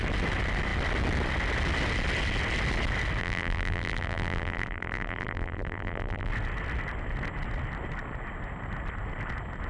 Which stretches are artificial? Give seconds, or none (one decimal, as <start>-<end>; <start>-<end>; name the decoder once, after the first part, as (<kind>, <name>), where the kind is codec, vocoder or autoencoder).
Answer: 3.2-6.3 (vocoder, BigVGAN v2)